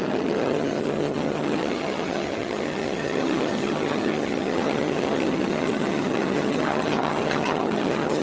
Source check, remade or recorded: remade